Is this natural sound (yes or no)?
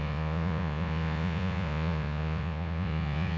no